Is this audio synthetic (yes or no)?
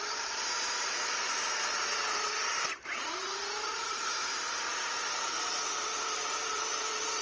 yes